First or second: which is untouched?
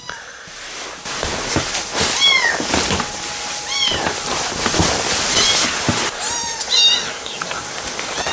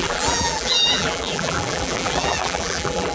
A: first